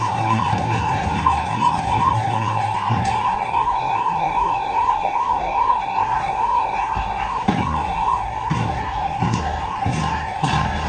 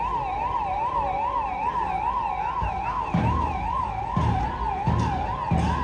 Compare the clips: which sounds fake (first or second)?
first